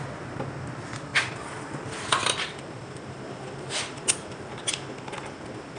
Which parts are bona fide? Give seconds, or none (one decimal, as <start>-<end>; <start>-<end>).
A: 0.0-1.1; 4.6-5.8